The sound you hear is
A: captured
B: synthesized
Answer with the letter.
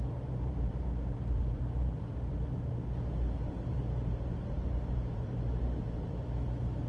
B